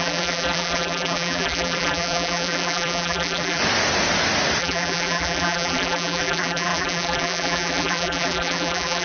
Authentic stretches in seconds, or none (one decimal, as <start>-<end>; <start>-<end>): 3.6-4.6